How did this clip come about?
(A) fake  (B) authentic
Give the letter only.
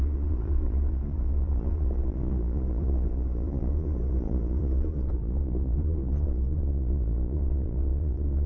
A